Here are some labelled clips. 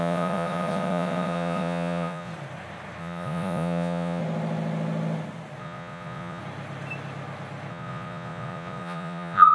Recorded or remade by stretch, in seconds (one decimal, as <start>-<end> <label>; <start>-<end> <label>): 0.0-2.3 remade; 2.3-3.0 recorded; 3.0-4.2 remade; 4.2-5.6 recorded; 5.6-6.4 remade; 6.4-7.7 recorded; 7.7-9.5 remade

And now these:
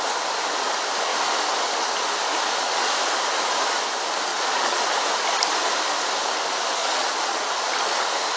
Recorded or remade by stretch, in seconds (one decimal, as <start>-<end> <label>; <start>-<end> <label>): 0.0-2.5 recorded; 2.5-3.1 remade; 3.1-4.3 recorded; 4.3-4.9 remade; 4.9-6.8 recorded; 6.8-7.5 remade; 7.5-8.4 recorded

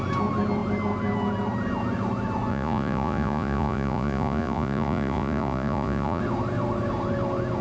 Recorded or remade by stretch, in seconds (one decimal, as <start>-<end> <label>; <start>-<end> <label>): 0.0-2.5 recorded; 2.5-6.2 remade; 6.2-7.6 recorded

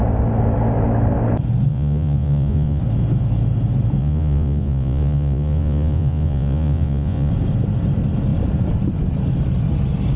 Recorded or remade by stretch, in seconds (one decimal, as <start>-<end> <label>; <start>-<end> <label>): 0.0-1.7 recorded; 1.7-2.8 remade; 2.8-4.0 recorded; 4.0-7.3 remade; 7.3-10.2 recorded